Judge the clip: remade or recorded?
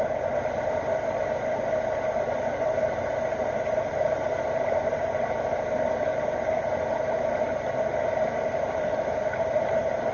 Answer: recorded